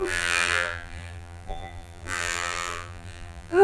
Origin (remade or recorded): remade